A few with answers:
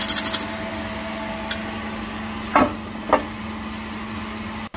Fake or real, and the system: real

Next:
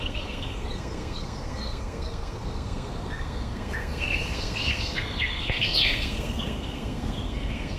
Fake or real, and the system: fake, codec, SNAC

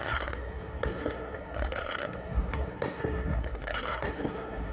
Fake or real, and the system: fake, codec, SNAC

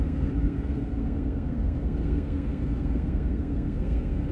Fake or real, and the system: fake, codec, SNAC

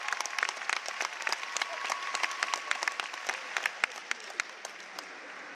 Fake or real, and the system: real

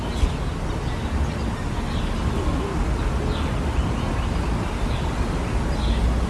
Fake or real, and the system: real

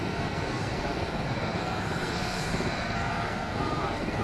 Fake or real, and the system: fake, codec, SNAC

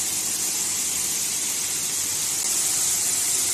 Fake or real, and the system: real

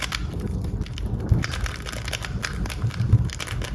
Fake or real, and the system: real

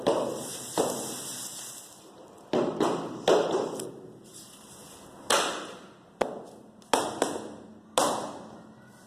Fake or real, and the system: real